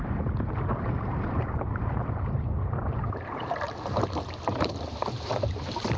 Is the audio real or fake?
fake